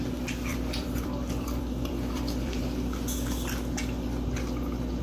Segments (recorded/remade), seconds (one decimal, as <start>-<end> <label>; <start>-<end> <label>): 0.0-0.5 recorded; 0.5-2.6 remade; 2.6-5.0 recorded